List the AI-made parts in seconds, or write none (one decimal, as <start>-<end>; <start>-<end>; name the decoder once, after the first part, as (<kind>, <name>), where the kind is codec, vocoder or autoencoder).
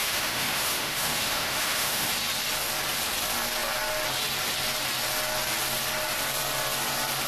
0.0-2.1 (autoencoder, DAC-VAE)